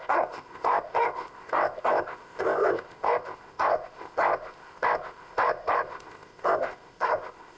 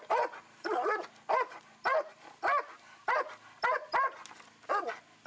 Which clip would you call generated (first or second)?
first